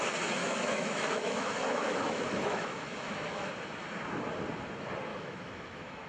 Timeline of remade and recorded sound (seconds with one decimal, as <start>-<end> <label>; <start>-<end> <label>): 0.0-0.4 recorded; 0.4-3.5 remade; 3.5-5.1 recorded; 5.1-6.1 remade